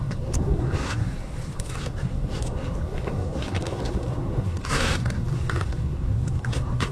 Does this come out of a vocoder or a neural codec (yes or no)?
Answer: yes